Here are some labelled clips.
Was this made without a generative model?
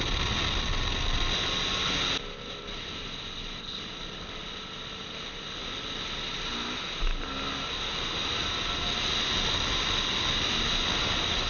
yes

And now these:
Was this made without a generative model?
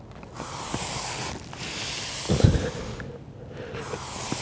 yes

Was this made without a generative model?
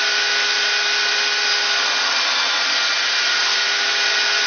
yes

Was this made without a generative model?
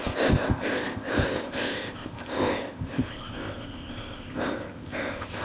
no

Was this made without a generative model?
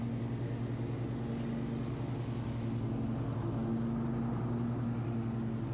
yes